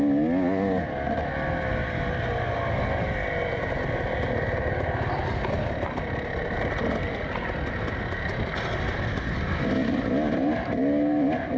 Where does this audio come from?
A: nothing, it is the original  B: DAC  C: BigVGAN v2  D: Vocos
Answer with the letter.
A